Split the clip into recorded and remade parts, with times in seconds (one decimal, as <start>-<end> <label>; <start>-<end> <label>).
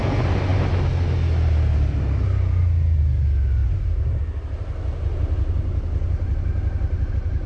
0.0-7.5 recorded